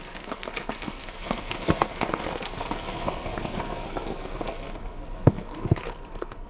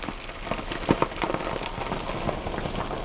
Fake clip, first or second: first